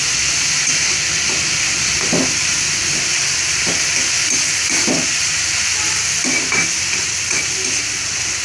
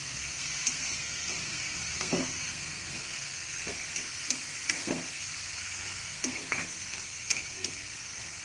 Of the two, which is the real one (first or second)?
first